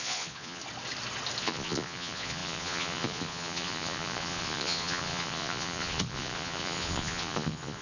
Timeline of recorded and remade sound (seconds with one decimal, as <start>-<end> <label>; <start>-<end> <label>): 0.0-0.6 remade; 0.6-1.4 recorded; 1.4-7.8 remade